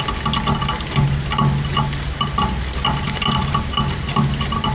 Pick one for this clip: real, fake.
real